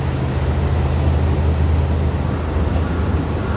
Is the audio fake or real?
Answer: real